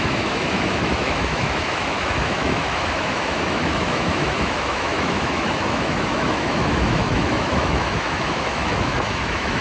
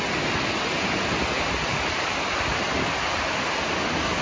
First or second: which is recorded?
second